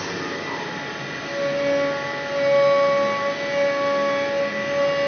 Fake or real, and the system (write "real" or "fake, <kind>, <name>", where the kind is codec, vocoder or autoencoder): real